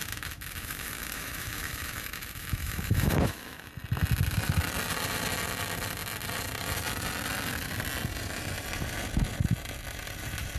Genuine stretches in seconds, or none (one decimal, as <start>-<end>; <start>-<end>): 3.7-10.6